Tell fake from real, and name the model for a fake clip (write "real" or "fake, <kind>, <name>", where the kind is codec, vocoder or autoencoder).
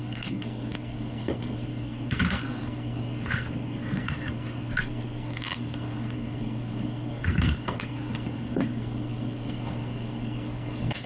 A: fake, codec, SNAC